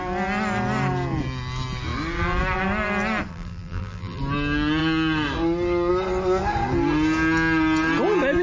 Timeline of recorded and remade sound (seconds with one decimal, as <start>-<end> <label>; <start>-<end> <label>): 0.0-3.3 recorded; 3.3-4.2 remade; 4.2-8.4 recorded